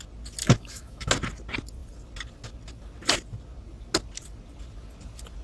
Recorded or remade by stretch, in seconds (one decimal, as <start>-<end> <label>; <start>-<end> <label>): 0.0-0.4 recorded; 0.4-1.1 remade; 1.1-5.4 recorded